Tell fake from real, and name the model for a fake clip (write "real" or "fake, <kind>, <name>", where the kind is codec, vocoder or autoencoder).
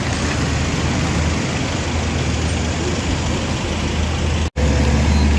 real